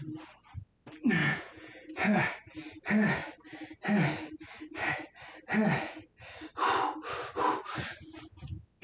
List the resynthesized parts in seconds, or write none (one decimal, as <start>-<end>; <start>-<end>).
1.2-2.2